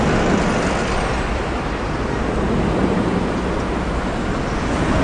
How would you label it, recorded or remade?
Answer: recorded